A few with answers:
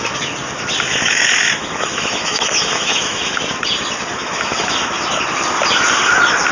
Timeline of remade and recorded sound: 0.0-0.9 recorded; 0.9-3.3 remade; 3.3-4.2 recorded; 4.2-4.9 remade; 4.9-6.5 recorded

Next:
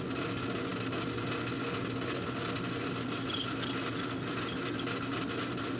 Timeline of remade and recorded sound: 0.0-5.8 recorded

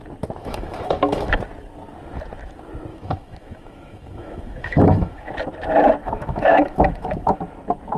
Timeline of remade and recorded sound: 0.0-0.4 recorded; 0.4-1.4 remade; 1.4-2.9 recorded; 2.9-5.3 remade; 5.3-6.0 recorded; 6.0-7.4 remade; 7.4-8.0 recorded

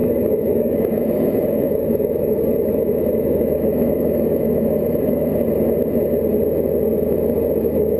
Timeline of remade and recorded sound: 0.0-5.3 remade; 5.3-7.6 recorded; 7.6-8.0 remade

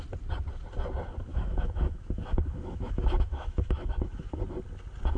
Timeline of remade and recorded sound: 0.0-1.3 recorded; 1.3-4.4 remade; 4.4-5.2 recorded